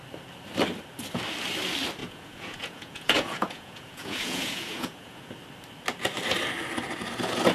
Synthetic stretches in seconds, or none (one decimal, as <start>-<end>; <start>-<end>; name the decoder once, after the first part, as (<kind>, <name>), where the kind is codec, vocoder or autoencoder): 2.0-5.3 (vocoder, Vocos)